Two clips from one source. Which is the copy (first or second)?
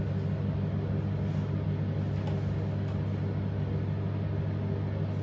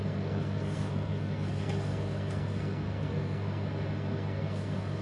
second